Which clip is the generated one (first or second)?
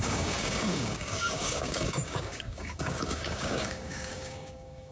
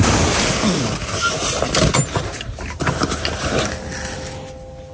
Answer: first